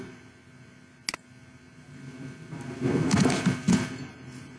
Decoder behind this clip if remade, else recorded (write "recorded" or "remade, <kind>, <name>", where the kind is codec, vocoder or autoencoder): recorded